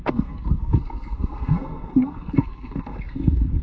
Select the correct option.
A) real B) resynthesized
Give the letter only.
B